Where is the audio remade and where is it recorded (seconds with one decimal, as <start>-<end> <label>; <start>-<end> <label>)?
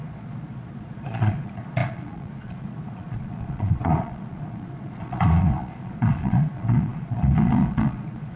0.0-8.4 remade